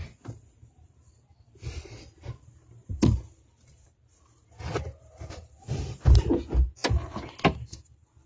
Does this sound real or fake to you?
real